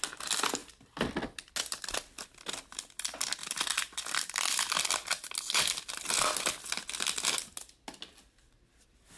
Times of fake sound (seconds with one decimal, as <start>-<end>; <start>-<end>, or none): none